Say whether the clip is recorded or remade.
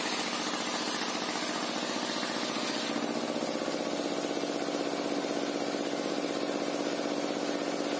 recorded